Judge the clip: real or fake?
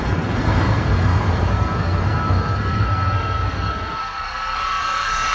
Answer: fake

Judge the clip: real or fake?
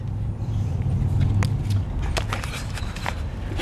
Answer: real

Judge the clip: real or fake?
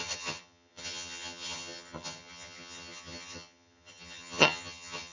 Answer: fake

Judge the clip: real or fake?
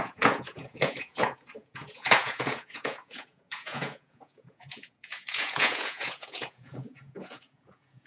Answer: fake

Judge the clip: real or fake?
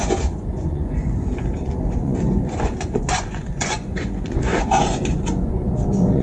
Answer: fake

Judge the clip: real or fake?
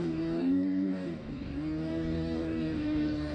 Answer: fake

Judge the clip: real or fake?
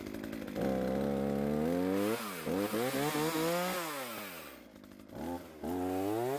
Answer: real